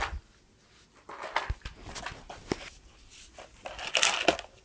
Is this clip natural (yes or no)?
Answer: yes